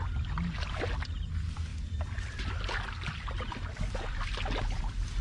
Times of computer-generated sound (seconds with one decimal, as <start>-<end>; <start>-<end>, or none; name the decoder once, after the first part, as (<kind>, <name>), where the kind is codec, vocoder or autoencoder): none